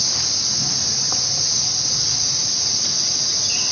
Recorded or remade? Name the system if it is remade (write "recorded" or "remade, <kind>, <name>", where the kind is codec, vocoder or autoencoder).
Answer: recorded